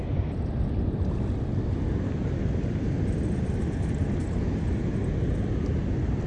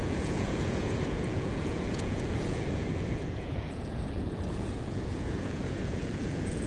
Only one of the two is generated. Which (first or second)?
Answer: second